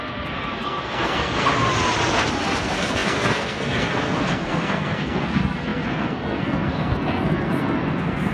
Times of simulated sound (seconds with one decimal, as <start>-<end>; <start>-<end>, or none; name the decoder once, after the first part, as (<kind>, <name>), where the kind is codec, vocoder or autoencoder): 0.0-1.5 (codec, SNAC); 2.6-8.3